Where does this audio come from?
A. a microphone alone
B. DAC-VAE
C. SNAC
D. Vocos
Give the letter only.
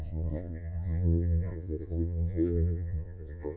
D